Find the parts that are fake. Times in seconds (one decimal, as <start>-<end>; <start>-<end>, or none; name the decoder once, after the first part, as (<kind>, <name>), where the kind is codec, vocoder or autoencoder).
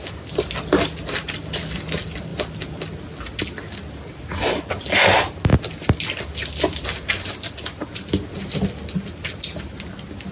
none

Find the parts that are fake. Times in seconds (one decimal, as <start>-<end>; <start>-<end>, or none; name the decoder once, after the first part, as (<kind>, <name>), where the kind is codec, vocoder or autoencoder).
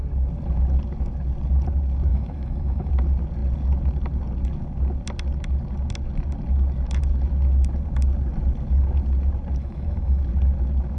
2.1-2.9 (autoencoder, DAC-VAE); 9.6-10.2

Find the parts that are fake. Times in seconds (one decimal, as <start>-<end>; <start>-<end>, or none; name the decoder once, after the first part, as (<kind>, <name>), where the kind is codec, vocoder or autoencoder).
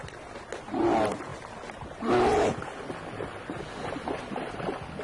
none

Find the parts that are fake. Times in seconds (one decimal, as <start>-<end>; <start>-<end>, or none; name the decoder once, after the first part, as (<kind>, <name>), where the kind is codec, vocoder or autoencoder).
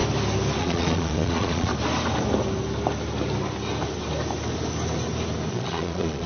0.6-1.7 (vocoder, Vocos); 5.5-6.3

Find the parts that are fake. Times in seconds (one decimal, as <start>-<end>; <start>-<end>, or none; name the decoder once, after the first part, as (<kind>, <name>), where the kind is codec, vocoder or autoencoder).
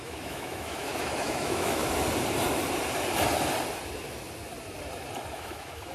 0.0-1.8 (autoencoder, DAC-VAE); 5.3-5.9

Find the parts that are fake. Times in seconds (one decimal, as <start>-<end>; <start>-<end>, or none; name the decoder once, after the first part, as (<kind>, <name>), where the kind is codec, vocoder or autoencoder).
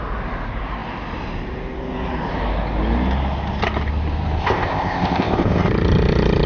4.4-5.6 (codec, ZipCodec)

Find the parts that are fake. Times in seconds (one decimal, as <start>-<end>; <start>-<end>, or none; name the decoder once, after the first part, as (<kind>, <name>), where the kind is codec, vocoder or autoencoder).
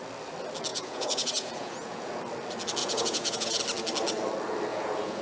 0.7-2.2 (vocoder, Vocos); 2.8-3.6; 4.7-5.2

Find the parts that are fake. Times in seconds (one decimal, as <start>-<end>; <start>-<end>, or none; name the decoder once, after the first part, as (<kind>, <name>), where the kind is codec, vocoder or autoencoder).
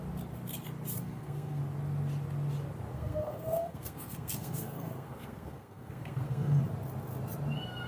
1.0-1.6 (codec, SNAC); 2.9-6.6